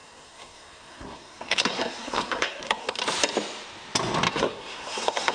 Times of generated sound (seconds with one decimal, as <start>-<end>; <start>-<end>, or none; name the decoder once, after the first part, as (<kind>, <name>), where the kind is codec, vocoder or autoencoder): 0.0-3.0 (codec, SNAC); 4.3-5.3